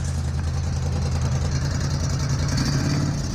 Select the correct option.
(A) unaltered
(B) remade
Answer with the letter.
A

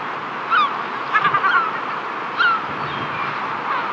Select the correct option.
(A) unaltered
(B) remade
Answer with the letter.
A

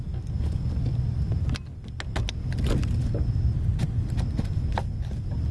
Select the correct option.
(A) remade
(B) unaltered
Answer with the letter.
B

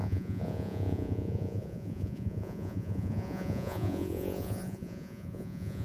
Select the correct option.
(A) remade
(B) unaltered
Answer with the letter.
A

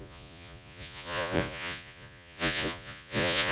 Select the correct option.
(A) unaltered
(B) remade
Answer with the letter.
B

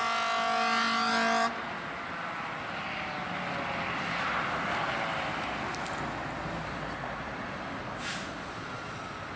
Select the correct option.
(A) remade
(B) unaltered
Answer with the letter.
B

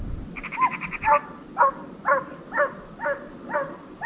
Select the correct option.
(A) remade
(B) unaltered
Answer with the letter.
B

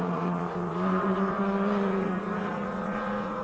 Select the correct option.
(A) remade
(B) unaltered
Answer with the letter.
A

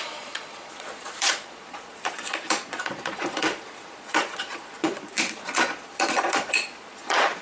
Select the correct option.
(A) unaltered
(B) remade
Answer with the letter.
B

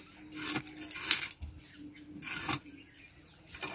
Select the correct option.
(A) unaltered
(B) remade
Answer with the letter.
A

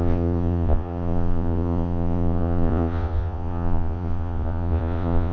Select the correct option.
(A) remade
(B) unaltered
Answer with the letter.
A